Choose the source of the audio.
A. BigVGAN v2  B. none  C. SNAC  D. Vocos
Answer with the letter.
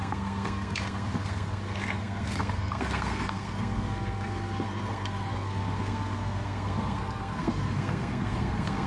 C